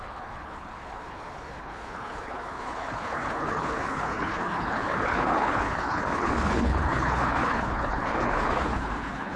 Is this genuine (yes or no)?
no